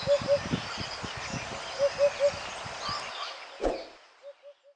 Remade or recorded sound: recorded